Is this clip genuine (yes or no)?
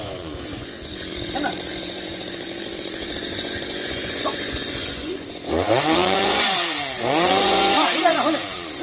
no